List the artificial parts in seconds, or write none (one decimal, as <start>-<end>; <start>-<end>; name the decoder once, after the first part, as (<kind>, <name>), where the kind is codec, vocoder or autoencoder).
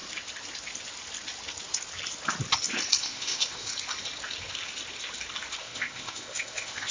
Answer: 3.0-3.7 (codec, ZipCodec); 5.6-6.9